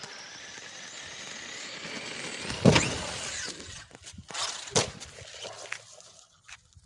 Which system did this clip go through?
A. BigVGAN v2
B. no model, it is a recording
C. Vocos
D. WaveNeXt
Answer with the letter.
B